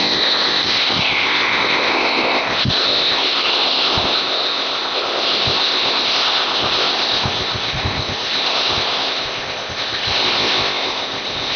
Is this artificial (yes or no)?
yes